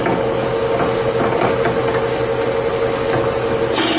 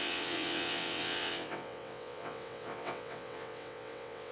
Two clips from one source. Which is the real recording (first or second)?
first